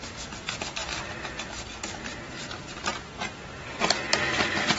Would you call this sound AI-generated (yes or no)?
no